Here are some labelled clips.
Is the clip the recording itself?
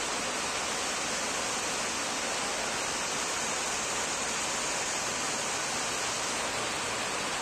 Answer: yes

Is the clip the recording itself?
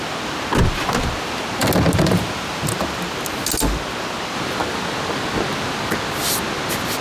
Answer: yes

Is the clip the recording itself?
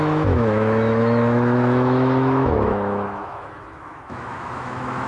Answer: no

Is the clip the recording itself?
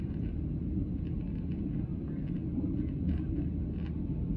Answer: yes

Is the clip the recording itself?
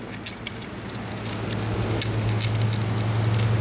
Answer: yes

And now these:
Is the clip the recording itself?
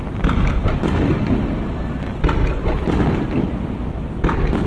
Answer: yes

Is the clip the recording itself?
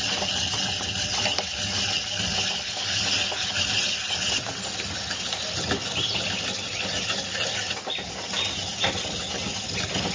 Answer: yes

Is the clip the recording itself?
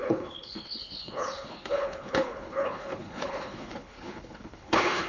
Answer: no